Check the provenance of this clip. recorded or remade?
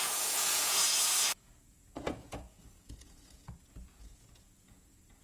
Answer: remade